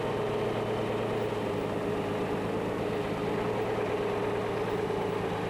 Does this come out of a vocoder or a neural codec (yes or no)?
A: no